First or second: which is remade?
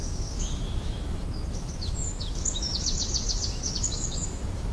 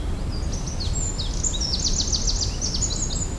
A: first